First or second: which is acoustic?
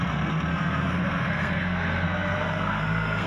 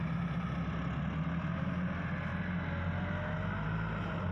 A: second